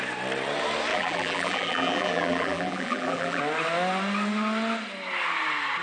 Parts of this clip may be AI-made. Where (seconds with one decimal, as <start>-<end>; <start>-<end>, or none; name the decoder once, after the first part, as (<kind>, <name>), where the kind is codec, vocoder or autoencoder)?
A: 0.9-3.4 (vocoder, BigVGAN v2)